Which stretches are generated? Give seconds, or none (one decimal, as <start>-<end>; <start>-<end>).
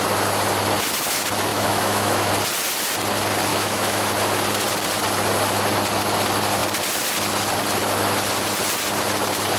1.5-2.3; 3.5-4.1